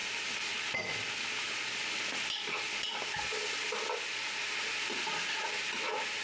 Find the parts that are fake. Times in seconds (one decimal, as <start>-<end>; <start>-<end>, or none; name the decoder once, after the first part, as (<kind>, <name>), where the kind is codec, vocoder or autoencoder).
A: none